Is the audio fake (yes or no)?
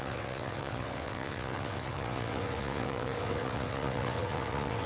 yes